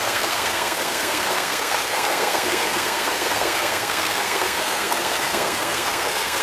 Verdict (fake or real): fake